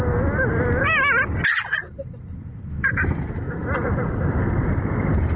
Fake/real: real